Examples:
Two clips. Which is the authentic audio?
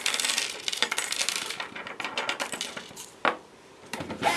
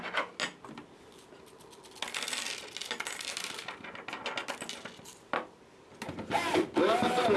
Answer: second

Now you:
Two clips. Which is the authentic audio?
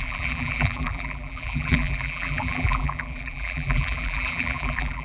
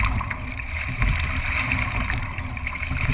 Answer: second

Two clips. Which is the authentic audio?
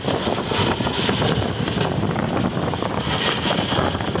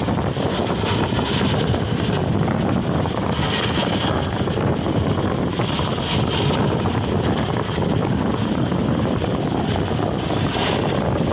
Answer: second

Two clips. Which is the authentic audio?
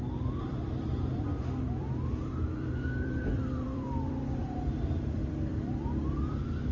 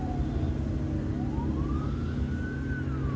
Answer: second